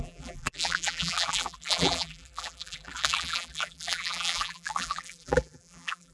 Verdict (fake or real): fake